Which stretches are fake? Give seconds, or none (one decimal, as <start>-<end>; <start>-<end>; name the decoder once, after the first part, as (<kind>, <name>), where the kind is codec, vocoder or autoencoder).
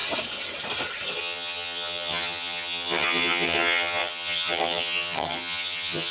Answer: 1.2-6.1 (vocoder, HiFi-GAN)